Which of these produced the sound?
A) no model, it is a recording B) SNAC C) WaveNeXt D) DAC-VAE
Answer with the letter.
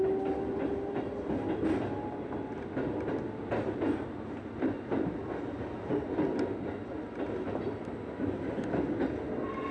A